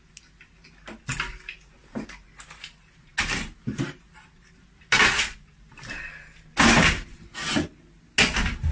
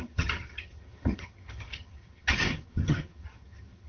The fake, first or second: second